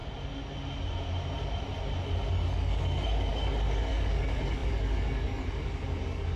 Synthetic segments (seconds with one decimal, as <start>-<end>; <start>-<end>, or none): 2.3-6.4